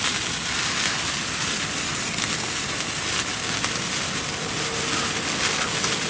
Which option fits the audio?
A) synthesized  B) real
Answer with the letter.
B